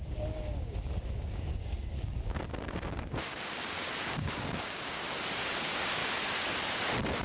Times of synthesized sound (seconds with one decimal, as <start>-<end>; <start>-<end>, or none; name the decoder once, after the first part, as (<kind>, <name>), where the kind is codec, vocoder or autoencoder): 0.0-6.0 (codec, DAC)